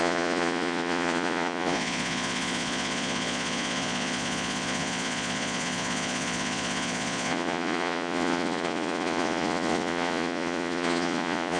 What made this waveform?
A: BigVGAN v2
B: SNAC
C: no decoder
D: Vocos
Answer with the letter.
D